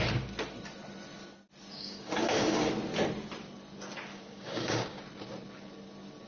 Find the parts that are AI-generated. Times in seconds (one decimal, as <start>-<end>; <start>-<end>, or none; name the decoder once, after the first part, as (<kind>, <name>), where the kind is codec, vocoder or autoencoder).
1.7-2.7 (codec, DAC); 4.1-5.0